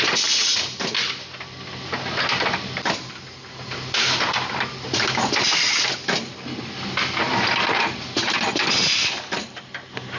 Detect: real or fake fake